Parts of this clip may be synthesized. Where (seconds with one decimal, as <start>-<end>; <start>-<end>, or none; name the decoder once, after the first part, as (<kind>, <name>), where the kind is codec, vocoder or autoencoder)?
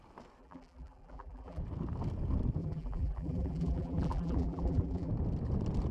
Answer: 0.4-1.6 (vocoder, BigVGAN v2); 2.6-5.1